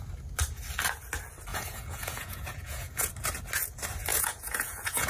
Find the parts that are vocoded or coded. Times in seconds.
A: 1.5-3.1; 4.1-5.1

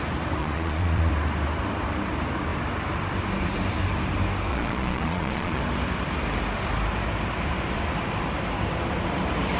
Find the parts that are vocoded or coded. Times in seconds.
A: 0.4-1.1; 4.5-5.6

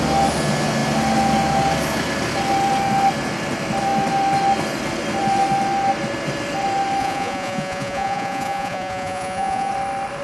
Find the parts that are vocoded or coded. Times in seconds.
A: 7.0-9.7

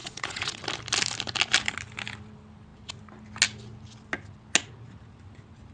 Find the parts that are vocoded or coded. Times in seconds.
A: 0.0-0.6

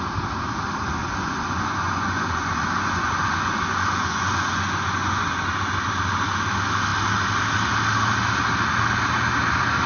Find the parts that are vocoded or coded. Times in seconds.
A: 1.0-5.2

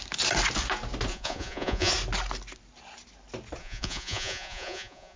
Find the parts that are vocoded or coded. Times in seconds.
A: 1.1-1.9; 3.6-5.2

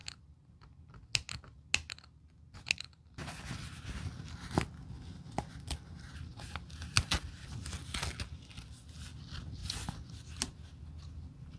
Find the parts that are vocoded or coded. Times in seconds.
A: 9.6-10.1